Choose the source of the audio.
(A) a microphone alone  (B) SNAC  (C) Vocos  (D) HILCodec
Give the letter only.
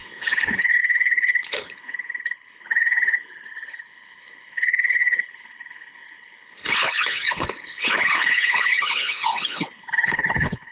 D